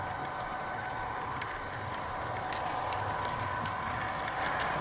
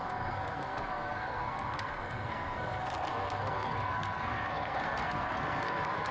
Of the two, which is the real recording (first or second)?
first